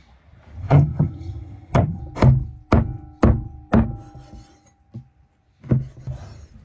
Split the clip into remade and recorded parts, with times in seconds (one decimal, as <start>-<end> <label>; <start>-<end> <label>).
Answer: 0.0-0.6 recorded; 0.6-2.0 remade; 2.0-6.6 recorded